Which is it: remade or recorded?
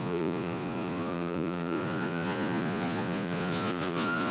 remade